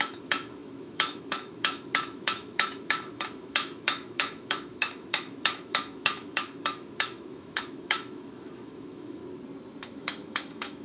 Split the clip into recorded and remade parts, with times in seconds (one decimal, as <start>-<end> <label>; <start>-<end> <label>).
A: 0.0-9.2 remade; 9.2-9.9 recorded; 9.9-10.8 remade